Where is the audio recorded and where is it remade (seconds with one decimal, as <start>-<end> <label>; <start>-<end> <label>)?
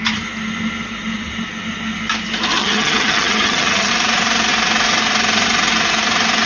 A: 0.0-2.6 recorded; 2.6-3.9 remade; 3.9-6.5 recorded